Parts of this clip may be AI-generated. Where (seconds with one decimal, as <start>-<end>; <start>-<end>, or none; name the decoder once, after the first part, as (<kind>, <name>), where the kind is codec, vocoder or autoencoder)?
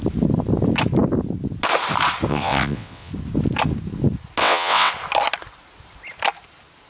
2.3-3.1 (vocoder, WaveNeXt); 4.4-4.9